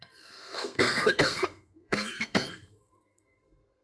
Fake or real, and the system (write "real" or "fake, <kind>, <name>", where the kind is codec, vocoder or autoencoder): fake, codec, SNAC